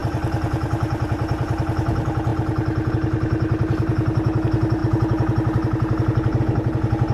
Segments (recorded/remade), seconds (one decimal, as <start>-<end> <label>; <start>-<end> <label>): 0.0-1.6 remade; 1.6-7.1 recorded